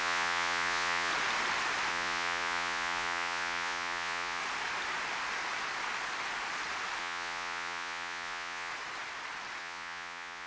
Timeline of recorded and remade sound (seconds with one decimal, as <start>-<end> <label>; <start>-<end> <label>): 0.0-1.1 remade; 1.1-1.9 recorded; 1.9-4.4 remade; 4.4-7.0 recorded; 7.0-8.7 remade; 8.7-9.6 recorded; 9.6-10.5 remade